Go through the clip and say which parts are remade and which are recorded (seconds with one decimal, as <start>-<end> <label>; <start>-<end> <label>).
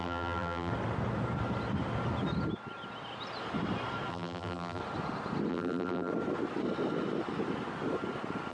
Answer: 0.0-0.7 remade; 0.7-4.1 recorded; 4.1-4.8 remade; 4.8-5.5 recorded; 5.5-6.1 remade; 6.1-8.5 recorded